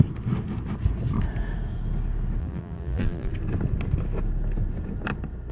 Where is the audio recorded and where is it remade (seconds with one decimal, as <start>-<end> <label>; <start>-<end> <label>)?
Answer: 0.0-2.4 recorded; 2.4-3.3 remade; 3.3-5.5 recorded